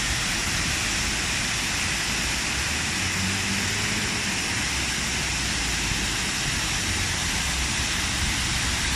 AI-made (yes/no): no